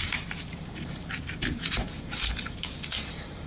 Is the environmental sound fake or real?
fake